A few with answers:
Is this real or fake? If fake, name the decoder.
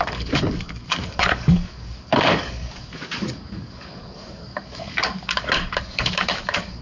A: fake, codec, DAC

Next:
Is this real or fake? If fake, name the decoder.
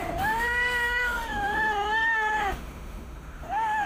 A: fake, autoencoder, DAC-VAE